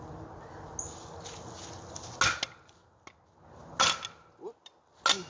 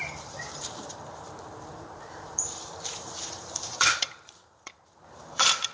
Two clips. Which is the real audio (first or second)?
first